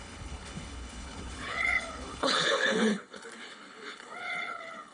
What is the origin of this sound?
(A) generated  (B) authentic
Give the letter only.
A